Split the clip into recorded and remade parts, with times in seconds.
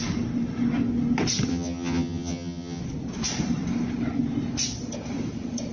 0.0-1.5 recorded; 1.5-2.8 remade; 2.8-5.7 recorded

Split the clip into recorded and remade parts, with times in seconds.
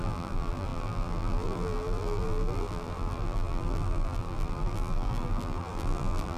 0.0-6.4 remade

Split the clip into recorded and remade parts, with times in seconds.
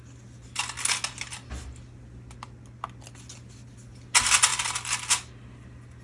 0.0-6.0 recorded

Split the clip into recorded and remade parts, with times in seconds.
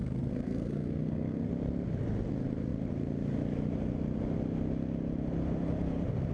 0.0-1.5 remade; 1.5-6.3 recorded